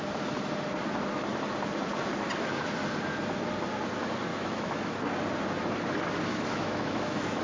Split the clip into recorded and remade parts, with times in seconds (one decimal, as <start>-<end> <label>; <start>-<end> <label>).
0.0-4.3 recorded; 4.3-4.9 remade; 4.9-6.3 recorded; 6.3-7.4 remade

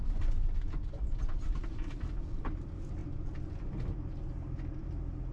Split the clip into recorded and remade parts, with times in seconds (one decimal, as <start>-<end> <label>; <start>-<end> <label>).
0.0-5.3 recorded

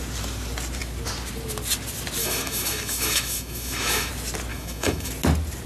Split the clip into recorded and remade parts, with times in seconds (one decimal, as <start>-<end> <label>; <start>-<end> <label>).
0.0-2.2 recorded; 2.2-4.1 remade; 4.1-4.5 recorded; 4.5-5.1 remade; 5.1-5.7 recorded

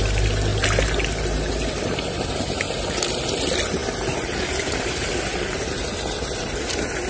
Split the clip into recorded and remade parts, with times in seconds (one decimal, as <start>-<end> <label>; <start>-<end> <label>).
0.0-7.1 recorded

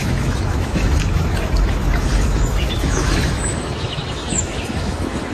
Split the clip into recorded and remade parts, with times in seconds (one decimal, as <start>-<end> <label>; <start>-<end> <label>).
0.0-5.3 remade